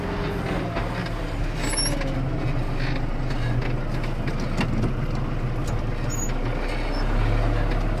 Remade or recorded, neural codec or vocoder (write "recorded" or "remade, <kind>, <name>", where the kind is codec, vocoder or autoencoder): recorded